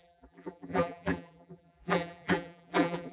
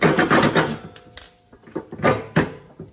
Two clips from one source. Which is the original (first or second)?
second